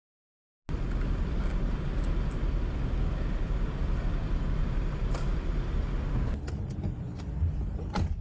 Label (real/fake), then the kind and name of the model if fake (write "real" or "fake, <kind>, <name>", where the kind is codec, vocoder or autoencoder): real